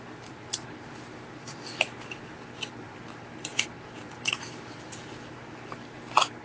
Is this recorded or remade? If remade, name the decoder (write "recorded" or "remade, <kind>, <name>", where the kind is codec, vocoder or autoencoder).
recorded